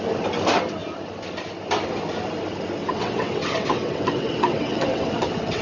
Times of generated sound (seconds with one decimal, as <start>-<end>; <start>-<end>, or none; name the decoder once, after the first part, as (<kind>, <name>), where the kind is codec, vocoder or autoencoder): 2.8-5.6 (vocoder, WaveNeXt)